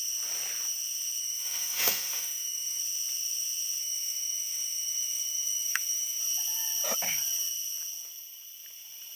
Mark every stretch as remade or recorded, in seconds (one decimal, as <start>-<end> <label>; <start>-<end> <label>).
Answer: 0.0-1.2 recorded; 1.2-2.8 remade; 2.8-3.8 recorded; 3.8-6.2 remade; 6.2-9.2 recorded